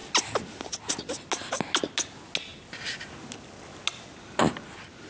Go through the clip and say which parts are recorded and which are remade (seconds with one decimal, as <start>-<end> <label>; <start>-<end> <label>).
0.0-5.1 recorded